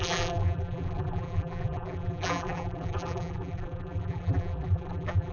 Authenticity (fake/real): fake